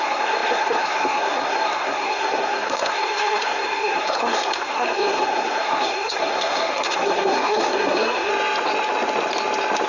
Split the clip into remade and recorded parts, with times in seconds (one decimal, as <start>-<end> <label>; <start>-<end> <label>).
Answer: 0.0-8.3 remade; 8.3-9.9 recorded